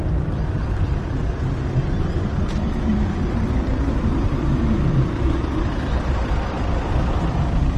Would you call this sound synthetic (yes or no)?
yes